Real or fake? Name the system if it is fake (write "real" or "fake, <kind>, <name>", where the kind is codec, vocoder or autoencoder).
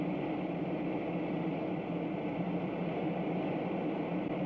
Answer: real